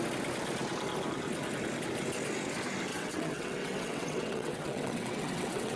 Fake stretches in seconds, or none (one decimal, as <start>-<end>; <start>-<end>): 2.9-5.8